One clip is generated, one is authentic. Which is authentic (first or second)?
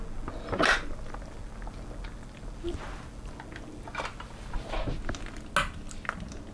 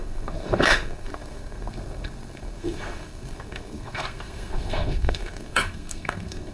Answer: first